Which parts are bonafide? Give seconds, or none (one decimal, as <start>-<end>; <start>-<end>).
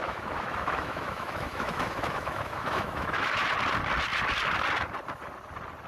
3.5-5.9